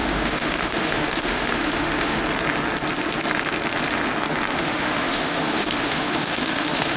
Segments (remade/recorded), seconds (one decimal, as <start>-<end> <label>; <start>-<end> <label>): 0.0-2.2 remade; 2.2-4.5 recorded; 4.5-7.0 remade